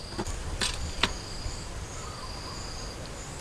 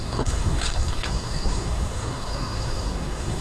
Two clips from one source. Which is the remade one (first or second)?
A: second